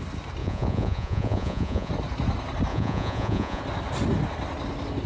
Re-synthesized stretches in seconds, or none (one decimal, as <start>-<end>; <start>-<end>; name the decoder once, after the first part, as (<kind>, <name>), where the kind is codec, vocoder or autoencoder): 0.4-1.9 (vocoder, Vocos); 2.7-3.6